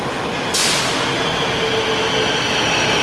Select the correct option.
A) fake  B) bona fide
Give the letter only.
B